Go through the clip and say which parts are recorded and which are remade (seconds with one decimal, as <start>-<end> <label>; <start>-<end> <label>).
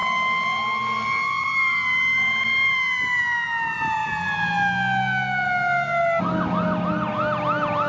0.0-7.9 recorded